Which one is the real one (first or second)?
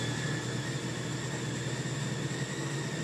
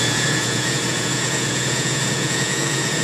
first